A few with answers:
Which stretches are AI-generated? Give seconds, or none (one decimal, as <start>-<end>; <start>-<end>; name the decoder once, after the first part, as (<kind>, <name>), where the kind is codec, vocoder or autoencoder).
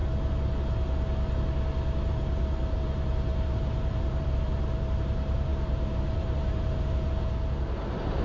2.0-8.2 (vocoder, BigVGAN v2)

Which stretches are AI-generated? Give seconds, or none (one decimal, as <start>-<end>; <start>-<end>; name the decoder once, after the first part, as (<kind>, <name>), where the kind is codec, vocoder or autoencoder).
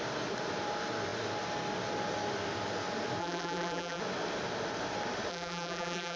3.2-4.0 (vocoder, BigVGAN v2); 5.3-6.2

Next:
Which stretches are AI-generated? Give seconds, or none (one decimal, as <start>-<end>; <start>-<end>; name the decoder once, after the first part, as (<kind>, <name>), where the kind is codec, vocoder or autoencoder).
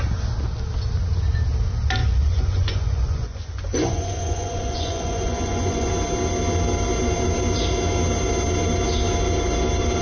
2.0-5.9 (vocoder, Vocos)